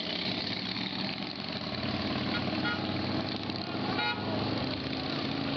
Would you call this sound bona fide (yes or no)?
yes